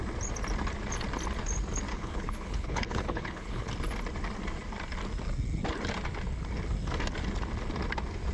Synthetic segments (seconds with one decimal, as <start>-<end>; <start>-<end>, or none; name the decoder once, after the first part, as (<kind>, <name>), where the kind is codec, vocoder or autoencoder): 1.9-3.7 (codec, HILCodec)

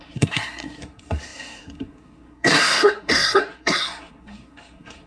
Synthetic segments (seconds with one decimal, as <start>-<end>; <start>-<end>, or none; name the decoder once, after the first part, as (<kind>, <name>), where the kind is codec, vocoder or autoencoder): 0.0-5.1 (codec, SNAC)